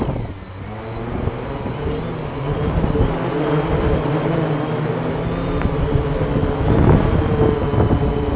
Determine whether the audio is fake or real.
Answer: real